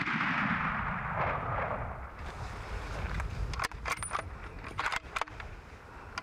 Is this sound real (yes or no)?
yes